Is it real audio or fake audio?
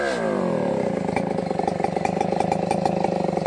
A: real